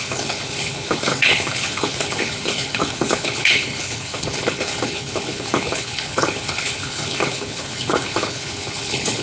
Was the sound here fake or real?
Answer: fake